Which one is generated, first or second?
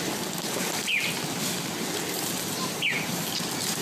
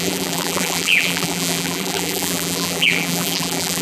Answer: second